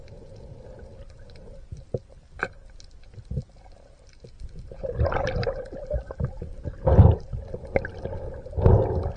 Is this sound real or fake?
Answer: real